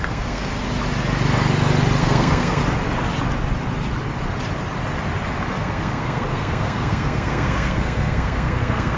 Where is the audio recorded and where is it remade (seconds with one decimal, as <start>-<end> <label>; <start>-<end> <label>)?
0.0-0.5 remade; 0.5-2.0 recorded; 2.0-2.6 remade; 2.6-5.5 recorded; 5.5-9.0 remade